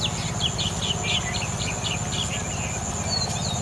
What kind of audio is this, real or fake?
real